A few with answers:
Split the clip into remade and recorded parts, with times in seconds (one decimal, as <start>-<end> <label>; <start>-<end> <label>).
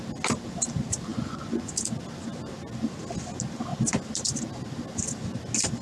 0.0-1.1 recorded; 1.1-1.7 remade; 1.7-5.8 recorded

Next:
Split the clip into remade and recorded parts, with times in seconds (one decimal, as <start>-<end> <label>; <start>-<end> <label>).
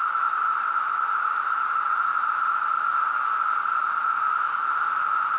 0.0-5.4 recorded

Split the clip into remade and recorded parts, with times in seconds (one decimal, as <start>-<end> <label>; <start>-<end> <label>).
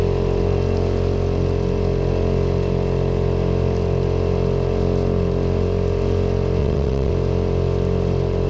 0.0-6.6 recorded; 6.6-7.1 remade; 7.1-8.5 recorded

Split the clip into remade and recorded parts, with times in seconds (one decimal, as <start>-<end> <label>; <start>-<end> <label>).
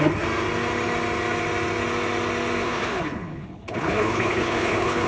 0.0-2.6 recorded; 2.6-5.1 remade